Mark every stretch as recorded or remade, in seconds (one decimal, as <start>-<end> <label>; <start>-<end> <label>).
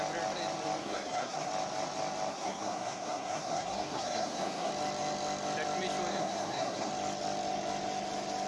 0.0-0.8 recorded; 0.8-1.5 remade; 1.5-2.3 recorded; 2.3-4.7 remade; 4.7-6.1 recorded; 6.1-6.9 remade; 6.9-8.5 recorded